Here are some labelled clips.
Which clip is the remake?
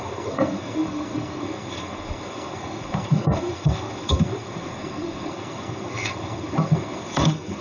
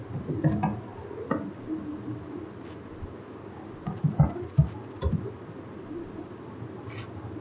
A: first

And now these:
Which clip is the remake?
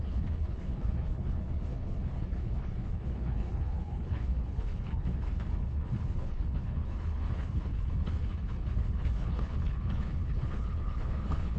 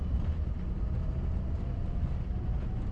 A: first